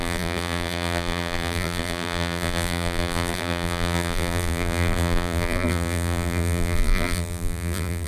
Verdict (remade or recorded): remade